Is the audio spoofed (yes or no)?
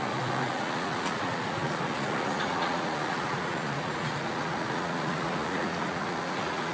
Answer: yes